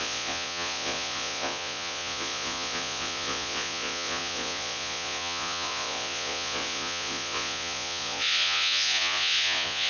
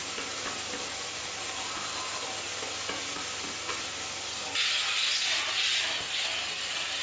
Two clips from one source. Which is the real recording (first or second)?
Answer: second